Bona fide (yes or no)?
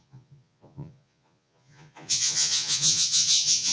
no